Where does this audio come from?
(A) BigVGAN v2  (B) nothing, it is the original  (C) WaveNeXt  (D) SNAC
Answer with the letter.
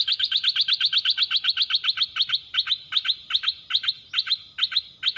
B